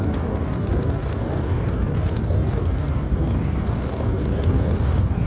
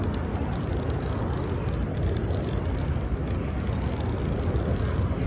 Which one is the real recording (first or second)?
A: second